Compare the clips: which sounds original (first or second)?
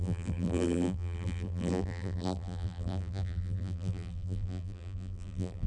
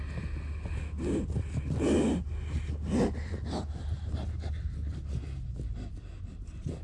second